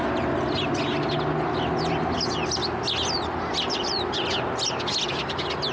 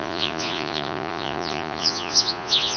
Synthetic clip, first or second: second